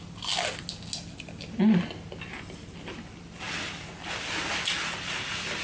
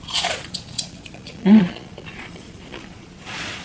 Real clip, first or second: first